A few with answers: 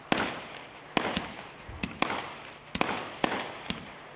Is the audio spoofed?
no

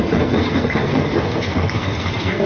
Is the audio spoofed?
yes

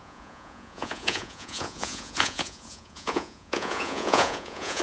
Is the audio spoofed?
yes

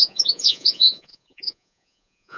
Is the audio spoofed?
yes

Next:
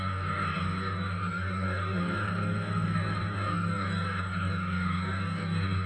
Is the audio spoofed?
yes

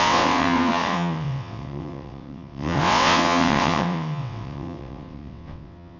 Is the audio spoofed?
yes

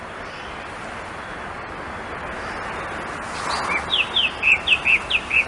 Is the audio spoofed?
no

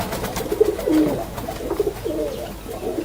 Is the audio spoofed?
no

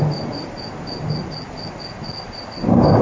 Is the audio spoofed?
no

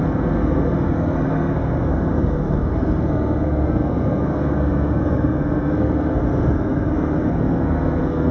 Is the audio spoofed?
yes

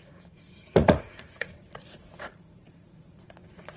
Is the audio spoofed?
yes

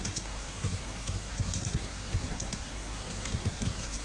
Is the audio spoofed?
yes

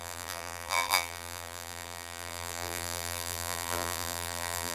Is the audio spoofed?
yes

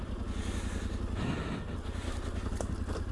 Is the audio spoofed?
no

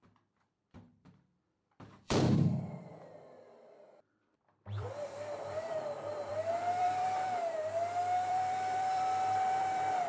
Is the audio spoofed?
yes